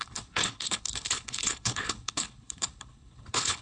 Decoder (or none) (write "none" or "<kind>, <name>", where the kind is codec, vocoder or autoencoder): codec, HILCodec